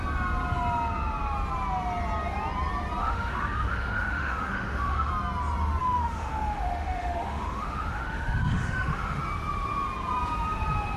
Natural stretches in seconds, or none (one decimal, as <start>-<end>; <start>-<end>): 0.0-3.0; 5.1-5.8; 9.2-11.0